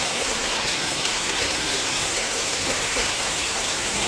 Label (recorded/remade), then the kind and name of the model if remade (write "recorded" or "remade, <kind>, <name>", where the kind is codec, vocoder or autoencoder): remade, codec, SNAC